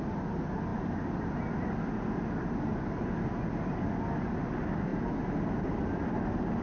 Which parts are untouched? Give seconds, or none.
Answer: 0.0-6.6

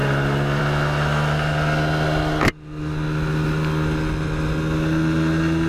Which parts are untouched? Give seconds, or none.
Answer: 0.0-5.7

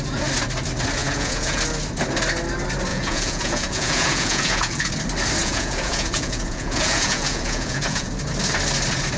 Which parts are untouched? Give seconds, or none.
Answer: 0.0-1.0; 1.6-2.9; 4.9-5.4; 8.1-9.2

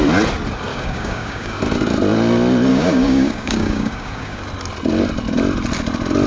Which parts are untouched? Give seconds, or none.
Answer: 0.0-0.7; 1.6-2.7; 4.4-6.3

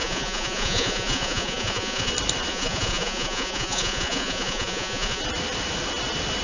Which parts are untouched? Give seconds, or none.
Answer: 2.1-2.5; 5.2-6.4

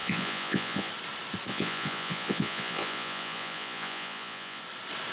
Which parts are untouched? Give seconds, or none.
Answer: 0.9-1.5; 4.6-5.1

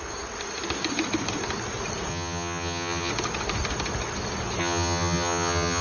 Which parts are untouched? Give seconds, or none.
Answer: 0.0-2.1; 3.1-4.6